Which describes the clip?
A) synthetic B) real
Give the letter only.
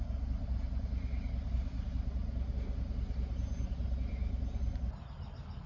B